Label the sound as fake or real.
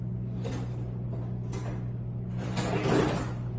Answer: real